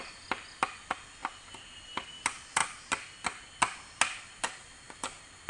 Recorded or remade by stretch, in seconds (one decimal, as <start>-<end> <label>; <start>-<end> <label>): 0.0-5.5 recorded